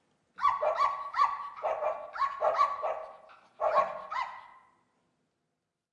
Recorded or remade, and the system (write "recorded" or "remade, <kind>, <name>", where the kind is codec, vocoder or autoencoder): recorded